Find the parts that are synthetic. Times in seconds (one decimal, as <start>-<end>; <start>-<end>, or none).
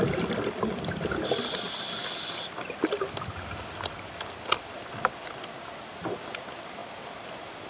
none